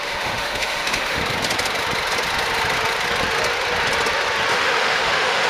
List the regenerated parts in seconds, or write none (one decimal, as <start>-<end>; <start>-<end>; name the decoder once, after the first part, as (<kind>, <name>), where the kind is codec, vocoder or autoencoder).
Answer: 0.0-1.2 (autoencoder, DAC-VAE); 4.5-5.5